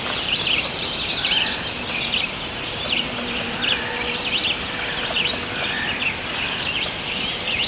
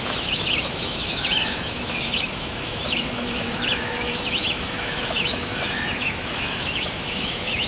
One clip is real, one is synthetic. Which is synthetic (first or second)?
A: second